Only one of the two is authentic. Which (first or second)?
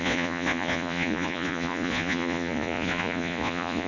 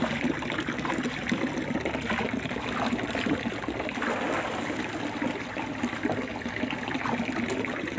second